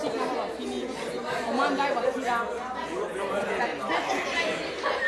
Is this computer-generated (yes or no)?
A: no